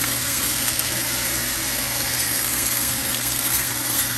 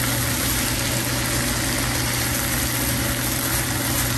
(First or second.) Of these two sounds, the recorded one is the second